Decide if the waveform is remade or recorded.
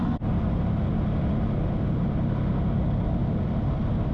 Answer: recorded